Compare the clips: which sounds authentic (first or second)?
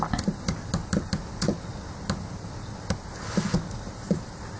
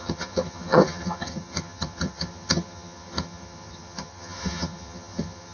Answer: first